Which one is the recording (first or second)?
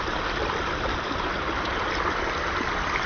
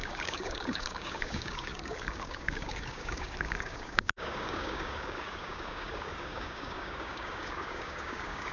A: first